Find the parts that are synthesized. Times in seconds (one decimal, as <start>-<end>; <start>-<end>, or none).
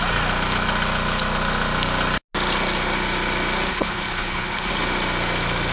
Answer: 3.7-4.7